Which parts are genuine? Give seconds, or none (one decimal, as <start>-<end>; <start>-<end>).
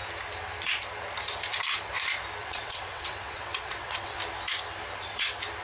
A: 0.0-2.4; 4.2-5.6